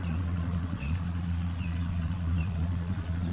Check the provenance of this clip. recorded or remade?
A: remade